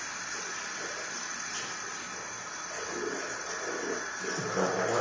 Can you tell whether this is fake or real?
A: real